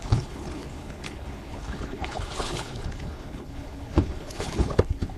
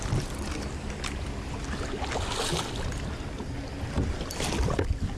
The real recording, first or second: second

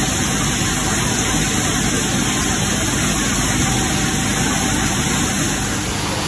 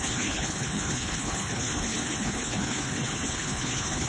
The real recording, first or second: first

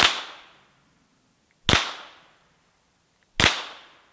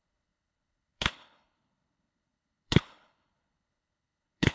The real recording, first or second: first